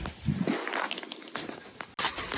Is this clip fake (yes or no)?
no